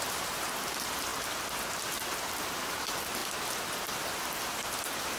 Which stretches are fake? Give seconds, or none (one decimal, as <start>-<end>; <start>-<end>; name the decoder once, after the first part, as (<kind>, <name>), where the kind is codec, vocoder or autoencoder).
0.0-1.1 (vocoder, BigVGAN v2); 2.2-3.2; 3.7-5.2